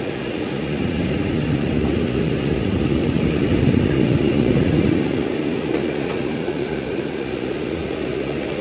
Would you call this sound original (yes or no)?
no